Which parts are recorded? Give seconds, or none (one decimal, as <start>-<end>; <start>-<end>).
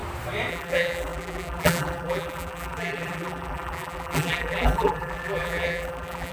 0.0-0.5